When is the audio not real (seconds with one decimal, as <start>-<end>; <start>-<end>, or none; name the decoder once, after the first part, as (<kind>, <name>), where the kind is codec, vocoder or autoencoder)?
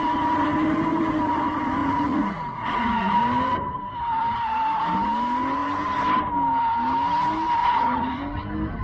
1.8-3.2 (vocoder, Vocos); 7.6-8.2